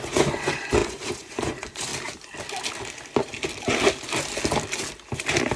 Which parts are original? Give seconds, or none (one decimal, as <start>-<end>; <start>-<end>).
1.9-5.6